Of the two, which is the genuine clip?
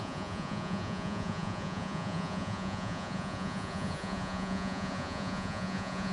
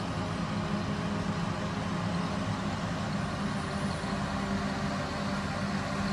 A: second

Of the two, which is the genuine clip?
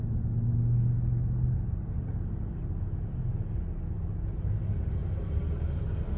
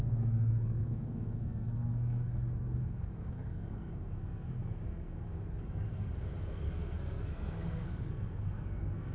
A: first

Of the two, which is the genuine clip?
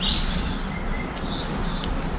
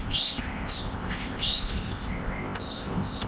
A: first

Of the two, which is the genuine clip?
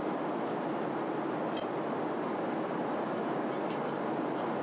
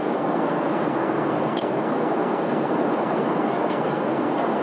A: first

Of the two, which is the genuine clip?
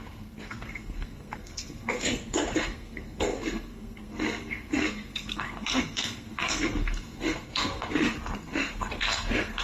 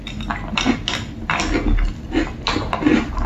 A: second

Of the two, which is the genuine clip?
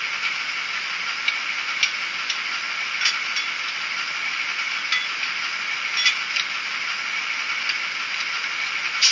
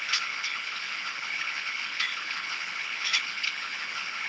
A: first